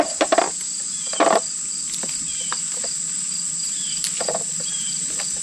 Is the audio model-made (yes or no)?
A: no